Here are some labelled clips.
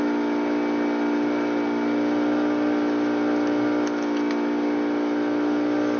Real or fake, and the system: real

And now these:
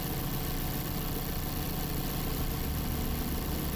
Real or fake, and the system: real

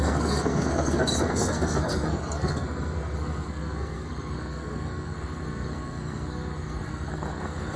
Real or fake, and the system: fake, codec, SNAC